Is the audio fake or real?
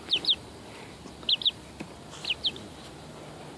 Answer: fake